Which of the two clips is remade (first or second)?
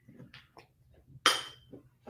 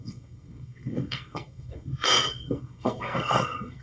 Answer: second